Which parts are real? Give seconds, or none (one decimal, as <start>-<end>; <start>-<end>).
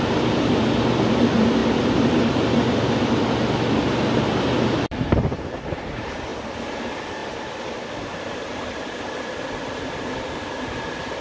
none